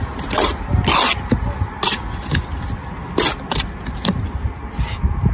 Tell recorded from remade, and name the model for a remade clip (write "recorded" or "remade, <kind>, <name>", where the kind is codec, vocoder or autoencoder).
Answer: recorded